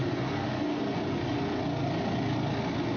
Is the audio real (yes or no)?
yes